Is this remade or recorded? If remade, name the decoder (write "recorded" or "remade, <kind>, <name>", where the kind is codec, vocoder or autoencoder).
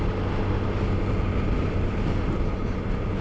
recorded